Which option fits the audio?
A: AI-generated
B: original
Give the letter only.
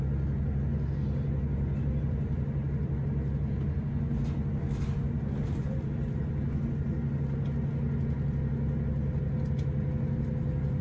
B